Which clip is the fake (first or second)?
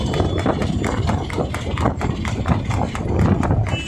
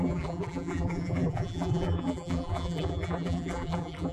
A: second